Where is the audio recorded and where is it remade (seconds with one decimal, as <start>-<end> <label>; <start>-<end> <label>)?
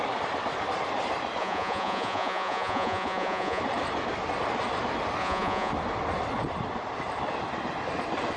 0.0-1.4 recorded; 1.4-3.6 remade; 3.6-5.2 recorded; 5.2-5.7 remade; 5.7-8.4 recorded